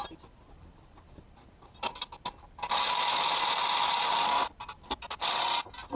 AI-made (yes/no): no